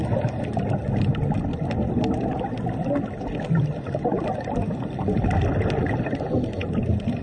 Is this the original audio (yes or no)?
yes